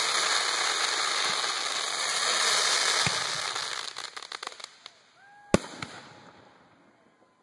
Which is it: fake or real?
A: real